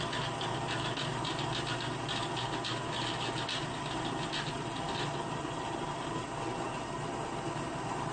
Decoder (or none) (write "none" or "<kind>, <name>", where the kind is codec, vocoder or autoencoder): none